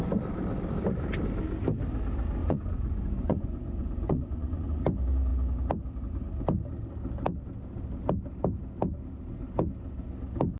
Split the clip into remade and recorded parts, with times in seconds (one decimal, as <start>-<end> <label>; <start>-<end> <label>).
0.0-2.4 recorded; 2.4-4.8 remade; 4.8-10.6 recorded